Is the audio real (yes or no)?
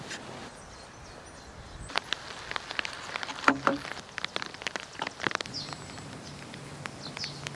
yes